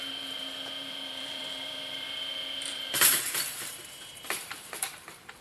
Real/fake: fake